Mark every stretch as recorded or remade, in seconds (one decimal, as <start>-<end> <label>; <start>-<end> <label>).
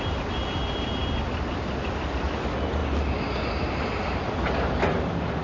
0.0-5.4 recorded